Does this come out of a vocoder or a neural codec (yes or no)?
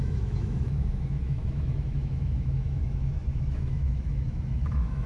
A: yes